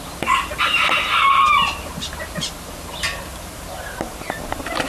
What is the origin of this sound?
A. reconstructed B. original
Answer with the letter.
A